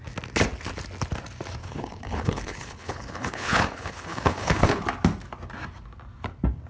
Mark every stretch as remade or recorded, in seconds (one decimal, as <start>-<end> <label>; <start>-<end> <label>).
0.0-1.6 recorded; 1.6-4.8 remade; 4.8-6.7 recorded